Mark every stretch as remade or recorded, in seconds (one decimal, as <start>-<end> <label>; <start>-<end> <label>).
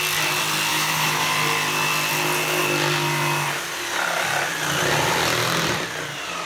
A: 0.0-0.7 recorded; 0.7-1.3 remade; 1.3-6.5 recorded